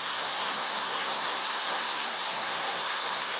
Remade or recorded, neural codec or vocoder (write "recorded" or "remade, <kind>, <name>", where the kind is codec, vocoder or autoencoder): remade, codec, SNAC